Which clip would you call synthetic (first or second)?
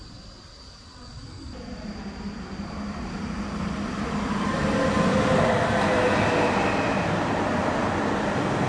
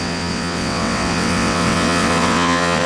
second